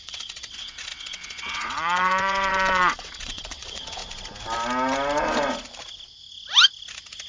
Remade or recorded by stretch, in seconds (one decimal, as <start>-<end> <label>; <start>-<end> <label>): 0.0-4.0 remade; 4.0-7.3 recorded